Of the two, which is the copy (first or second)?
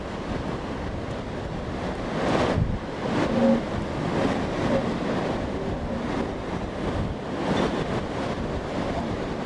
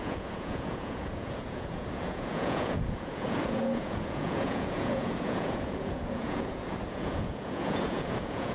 second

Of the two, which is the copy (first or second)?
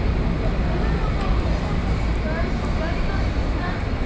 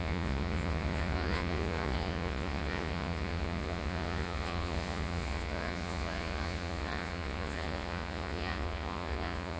second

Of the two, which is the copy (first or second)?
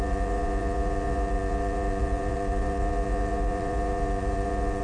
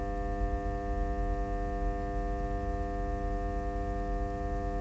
first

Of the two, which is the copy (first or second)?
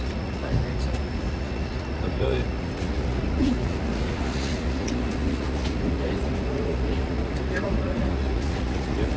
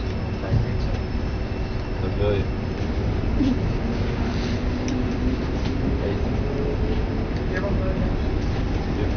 first